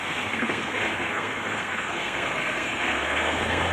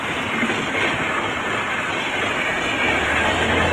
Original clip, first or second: second